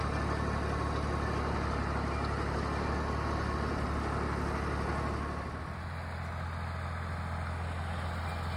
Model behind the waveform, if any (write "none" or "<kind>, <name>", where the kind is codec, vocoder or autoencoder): none